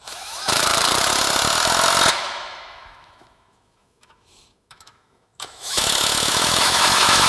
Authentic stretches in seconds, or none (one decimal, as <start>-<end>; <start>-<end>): 0.7-2.1